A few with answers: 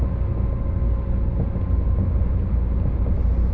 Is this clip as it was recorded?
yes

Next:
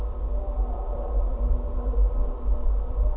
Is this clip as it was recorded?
no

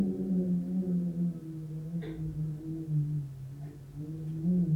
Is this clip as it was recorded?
yes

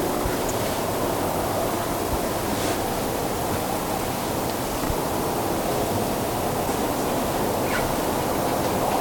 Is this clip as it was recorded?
yes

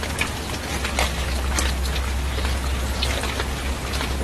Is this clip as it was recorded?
yes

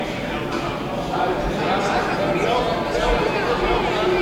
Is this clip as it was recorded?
yes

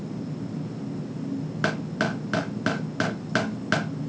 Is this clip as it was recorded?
yes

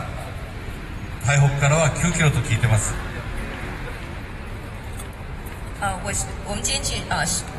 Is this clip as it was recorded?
yes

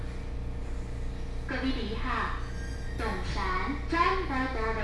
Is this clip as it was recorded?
yes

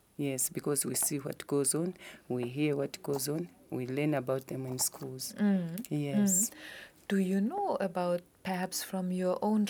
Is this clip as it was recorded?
yes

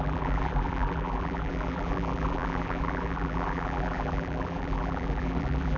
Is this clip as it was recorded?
no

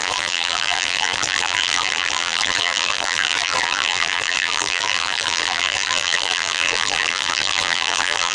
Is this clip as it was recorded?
no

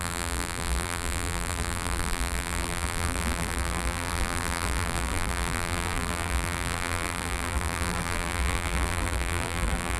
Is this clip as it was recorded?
no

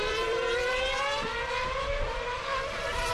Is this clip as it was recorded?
no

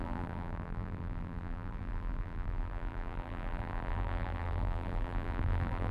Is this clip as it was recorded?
no